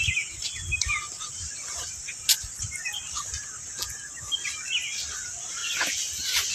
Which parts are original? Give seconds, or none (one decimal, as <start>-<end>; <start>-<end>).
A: 0.0-6.5